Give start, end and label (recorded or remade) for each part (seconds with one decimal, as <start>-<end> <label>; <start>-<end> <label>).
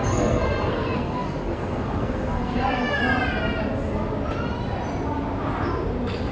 0.0-3.0 remade; 3.0-6.3 recorded